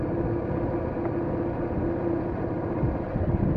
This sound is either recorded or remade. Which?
recorded